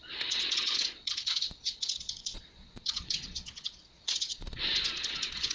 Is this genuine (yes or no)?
no